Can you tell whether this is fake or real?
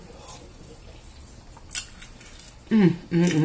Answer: real